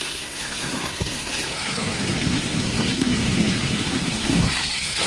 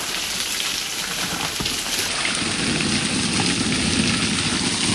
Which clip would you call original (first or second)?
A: second